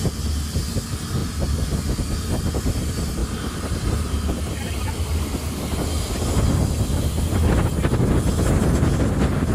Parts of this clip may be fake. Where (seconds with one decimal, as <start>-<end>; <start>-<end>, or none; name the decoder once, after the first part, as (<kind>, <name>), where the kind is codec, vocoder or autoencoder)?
3.2-5.6 (vocoder, BigVGAN v2)